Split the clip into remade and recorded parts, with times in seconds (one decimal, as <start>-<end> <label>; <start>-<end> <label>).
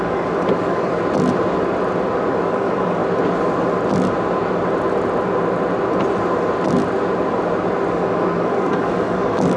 0.0-0.9 remade; 0.9-2.3 recorded; 2.3-3.0 remade; 3.0-7.9 recorded; 7.9-9.6 remade